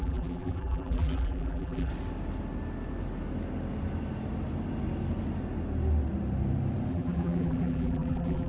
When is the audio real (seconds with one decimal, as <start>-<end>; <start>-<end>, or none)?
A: 1.9-6.9